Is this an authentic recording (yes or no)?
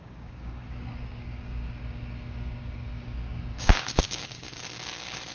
no